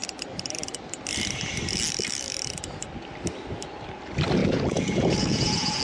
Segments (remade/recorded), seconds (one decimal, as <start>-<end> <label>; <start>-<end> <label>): 0.0-4.4 recorded; 4.4-5.8 remade